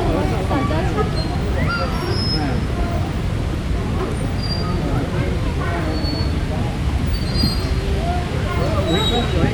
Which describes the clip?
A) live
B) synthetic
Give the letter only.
A